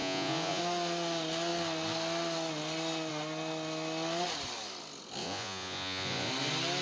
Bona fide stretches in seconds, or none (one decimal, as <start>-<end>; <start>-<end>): 0.6-5.2; 6.3-6.8